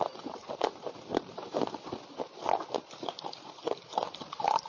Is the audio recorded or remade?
recorded